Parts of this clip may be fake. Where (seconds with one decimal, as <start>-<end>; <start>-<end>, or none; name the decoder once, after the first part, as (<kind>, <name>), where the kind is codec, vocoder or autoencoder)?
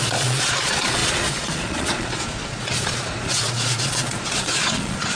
0.0-5.1 (vocoder, Vocos)